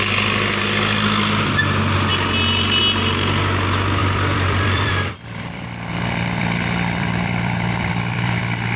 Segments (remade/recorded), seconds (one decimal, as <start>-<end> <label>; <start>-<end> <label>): 0.0-4.0 recorded; 4.0-8.4 remade; 8.4-8.8 recorded